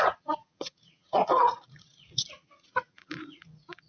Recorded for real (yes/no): no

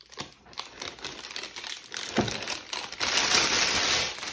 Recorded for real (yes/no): yes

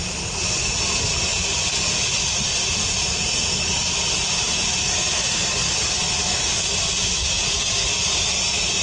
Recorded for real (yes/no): yes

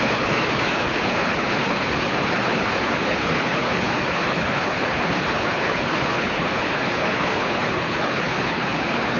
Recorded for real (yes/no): no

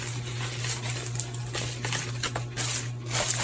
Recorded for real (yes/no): yes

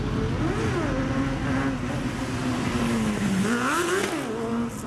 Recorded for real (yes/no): yes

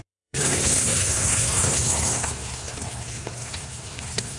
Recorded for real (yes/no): no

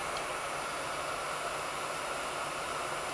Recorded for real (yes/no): yes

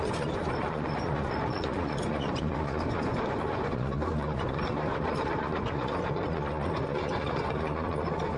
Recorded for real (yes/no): no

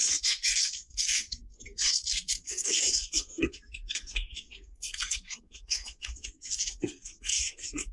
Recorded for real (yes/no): no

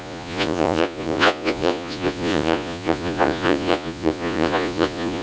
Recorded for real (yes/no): no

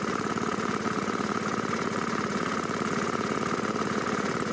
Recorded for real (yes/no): no